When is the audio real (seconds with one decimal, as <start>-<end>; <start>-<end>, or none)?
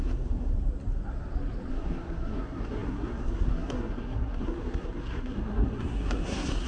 0.5-1.7